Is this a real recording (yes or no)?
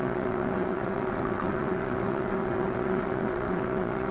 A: no